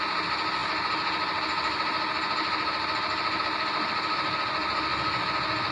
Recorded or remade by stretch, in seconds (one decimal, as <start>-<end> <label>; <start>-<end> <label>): 0.0-5.7 recorded